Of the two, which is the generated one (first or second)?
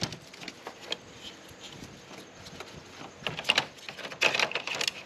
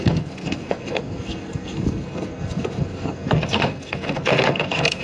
second